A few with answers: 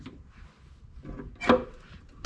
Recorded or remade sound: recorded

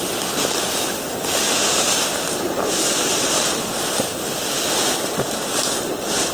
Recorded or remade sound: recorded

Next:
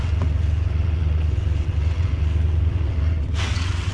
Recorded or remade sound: remade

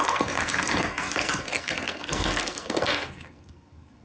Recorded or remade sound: remade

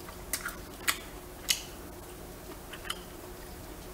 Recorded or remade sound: recorded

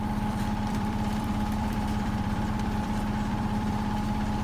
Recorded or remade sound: remade